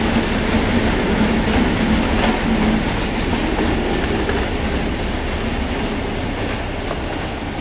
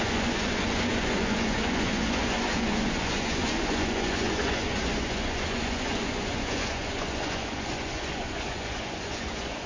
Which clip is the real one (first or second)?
first